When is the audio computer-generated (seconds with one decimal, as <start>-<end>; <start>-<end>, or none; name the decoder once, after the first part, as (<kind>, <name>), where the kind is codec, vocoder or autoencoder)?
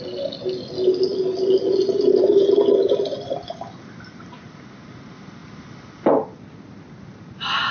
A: none